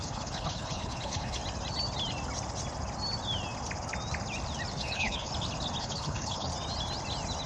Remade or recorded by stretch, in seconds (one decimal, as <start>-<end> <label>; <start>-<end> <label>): 0.0-1.4 remade; 1.4-4.8 recorded; 4.8-5.3 remade; 5.3-5.8 recorded; 5.8-6.5 remade; 6.5-7.5 recorded